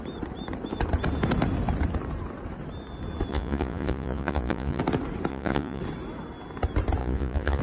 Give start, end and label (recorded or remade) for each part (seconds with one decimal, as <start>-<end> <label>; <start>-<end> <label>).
0.0-3.3 recorded; 3.3-4.8 remade; 4.8-5.3 recorded; 5.3-5.8 remade; 5.8-7.0 recorded; 7.0-7.6 remade

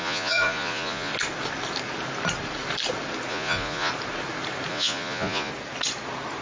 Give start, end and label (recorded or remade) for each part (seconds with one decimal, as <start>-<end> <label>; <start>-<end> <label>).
0.0-1.1 remade; 1.1-3.3 recorded; 3.3-3.9 remade; 3.9-4.7 recorded; 4.7-5.5 remade; 5.5-6.4 recorded

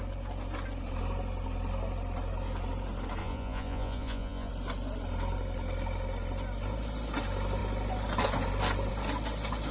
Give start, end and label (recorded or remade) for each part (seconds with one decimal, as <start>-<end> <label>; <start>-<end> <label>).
0.0-3.2 recorded; 3.2-4.5 remade; 4.5-9.7 recorded

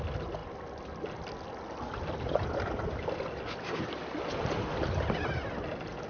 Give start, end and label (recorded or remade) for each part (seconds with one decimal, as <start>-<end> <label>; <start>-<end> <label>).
0.0-6.1 recorded

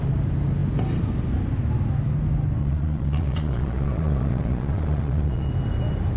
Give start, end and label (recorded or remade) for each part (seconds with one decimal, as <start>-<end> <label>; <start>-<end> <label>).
0.0-2.6 recorded; 2.6-5.5 remade; 5.5-6.2 recorded